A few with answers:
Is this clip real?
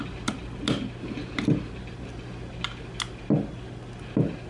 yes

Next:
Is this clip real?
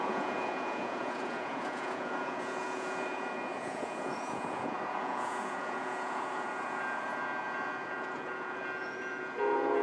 no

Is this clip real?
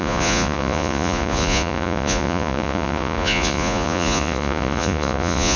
no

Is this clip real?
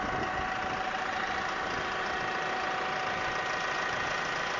yes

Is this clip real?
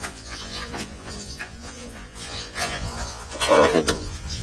no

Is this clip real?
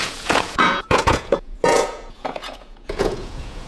no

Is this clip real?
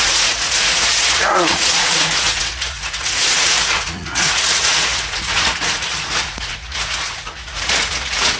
no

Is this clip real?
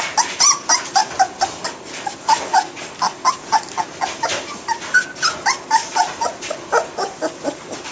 yes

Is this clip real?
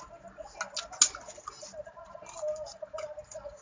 yes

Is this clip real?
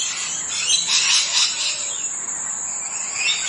yes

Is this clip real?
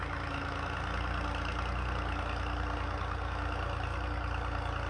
yes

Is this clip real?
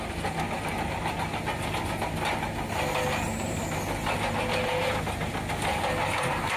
yes